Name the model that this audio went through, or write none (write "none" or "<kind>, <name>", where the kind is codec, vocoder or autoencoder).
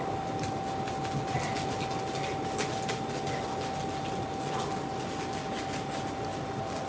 none